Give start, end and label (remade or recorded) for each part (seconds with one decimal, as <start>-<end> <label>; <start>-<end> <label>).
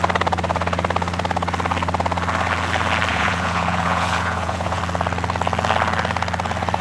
0.0-3.1 recorded; 3.1-4.8 remade; 4.8-6.8 recorded